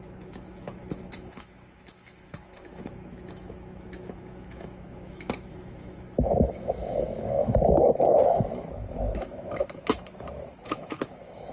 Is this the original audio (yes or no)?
no